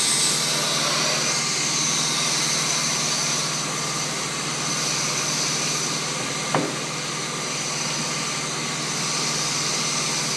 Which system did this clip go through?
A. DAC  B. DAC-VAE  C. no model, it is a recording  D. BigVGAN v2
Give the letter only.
C